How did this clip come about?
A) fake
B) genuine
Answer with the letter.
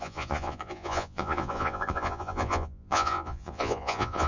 A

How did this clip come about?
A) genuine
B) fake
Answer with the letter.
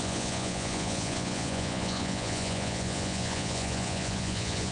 B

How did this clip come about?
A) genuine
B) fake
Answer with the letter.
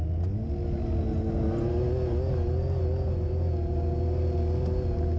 A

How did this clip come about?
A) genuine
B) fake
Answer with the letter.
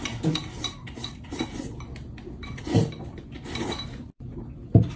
A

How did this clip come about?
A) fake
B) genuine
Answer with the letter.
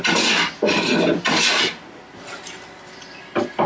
B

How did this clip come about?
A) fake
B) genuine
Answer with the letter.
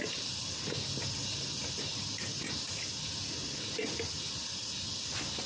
B